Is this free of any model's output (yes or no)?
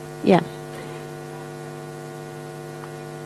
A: yes